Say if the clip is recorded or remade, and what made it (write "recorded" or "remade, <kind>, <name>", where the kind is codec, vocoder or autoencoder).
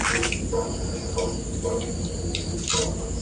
recorded